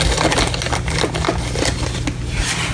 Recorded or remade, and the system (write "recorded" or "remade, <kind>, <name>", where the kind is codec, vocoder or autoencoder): recorded